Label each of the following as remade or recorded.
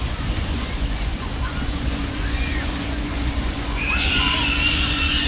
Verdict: remade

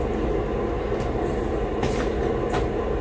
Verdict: recorded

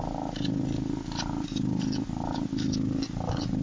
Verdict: recorded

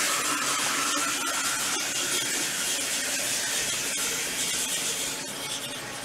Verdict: recorded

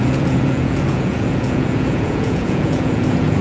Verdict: remade